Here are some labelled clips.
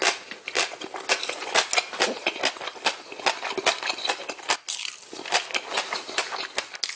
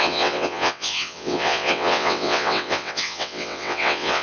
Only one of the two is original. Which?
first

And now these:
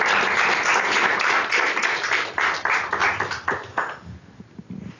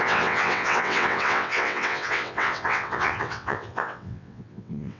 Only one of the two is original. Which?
first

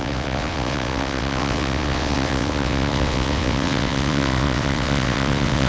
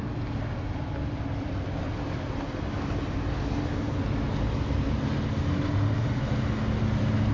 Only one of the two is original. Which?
second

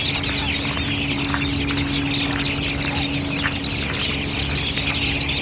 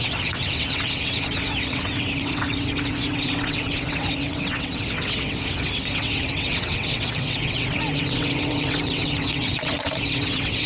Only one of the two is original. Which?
first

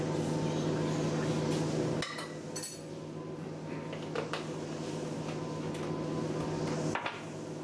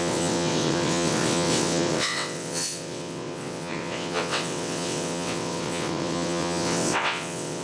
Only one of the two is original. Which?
first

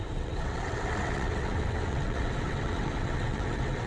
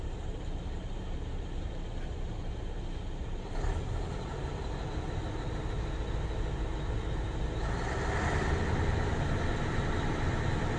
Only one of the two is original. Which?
second